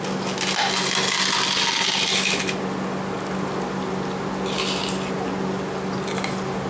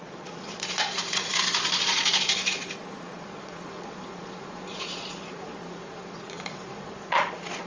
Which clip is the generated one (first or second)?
second